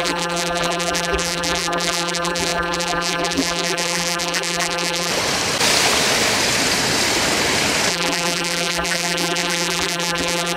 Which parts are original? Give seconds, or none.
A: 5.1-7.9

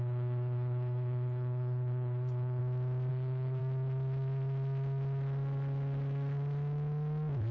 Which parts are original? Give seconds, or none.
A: 2.6-3.1; 3.6-7.5

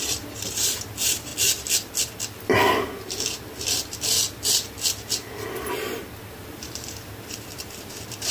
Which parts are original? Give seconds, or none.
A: 1.3-6.3

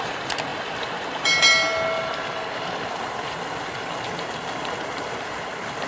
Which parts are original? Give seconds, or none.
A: 0.0-5.9

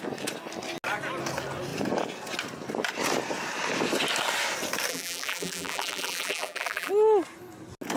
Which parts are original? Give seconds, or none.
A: 0.0-4.9; 6.9-8.0

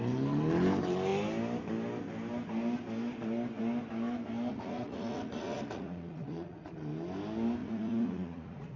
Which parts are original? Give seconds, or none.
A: 0.0-4.5; 6.7-7.6

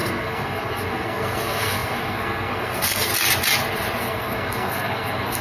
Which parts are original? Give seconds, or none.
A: 3.1-4.0

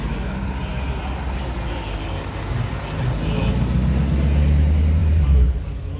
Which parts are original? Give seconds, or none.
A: 0.0-5.0; 5.6-6.0